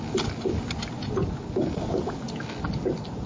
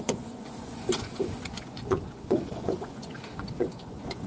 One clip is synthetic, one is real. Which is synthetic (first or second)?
second